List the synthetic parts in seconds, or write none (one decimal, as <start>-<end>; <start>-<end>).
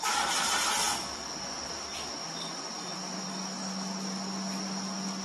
none